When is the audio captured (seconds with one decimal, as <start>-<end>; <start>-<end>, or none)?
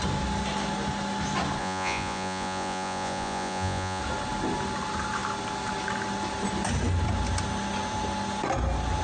0.0-1.6; 4.0-9.0